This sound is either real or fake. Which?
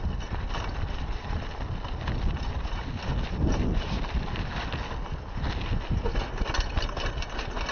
real